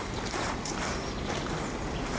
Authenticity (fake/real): fake